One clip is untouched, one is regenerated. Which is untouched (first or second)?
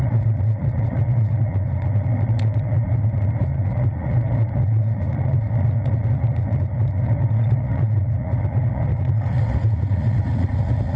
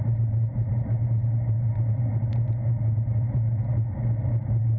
second